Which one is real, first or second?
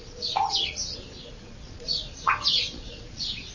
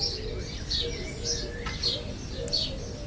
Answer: second